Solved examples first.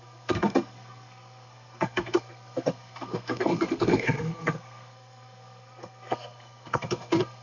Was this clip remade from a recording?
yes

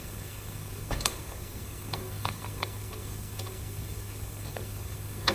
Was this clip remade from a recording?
yes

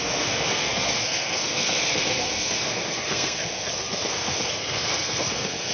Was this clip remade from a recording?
yes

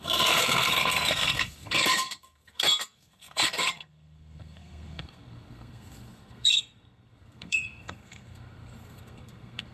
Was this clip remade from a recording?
yes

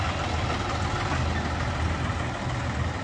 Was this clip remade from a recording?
no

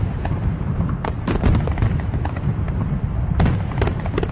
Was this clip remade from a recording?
no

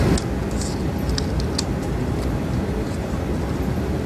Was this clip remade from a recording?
no